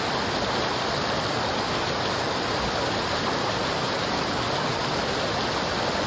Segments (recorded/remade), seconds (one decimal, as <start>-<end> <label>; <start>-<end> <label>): 0.0-6.1 recorded